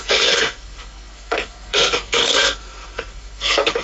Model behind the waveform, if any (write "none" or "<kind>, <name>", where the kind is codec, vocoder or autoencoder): codec, SNAC